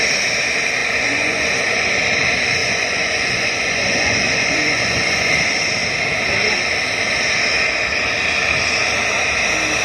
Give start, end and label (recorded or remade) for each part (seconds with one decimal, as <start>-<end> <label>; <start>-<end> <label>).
0.0-0.8 recorded; 0.8-1.9 remade; 1.9-2.6 recorded; 2.6-5.3 remade; 5.3-9.8 recorded

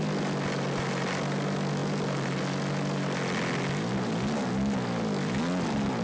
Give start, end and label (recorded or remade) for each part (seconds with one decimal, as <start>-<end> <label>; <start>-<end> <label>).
0.0-6.0 recorded